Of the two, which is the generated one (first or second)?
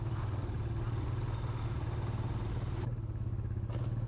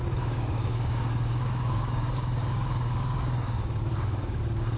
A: second